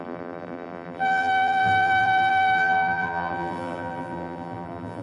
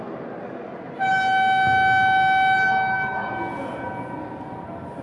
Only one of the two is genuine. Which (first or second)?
second